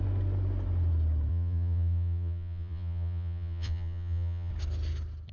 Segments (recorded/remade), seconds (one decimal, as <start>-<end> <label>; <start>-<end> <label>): 0.0-1.3 recorded; 1.3-4.5 remade; 4.5-5.3 recorded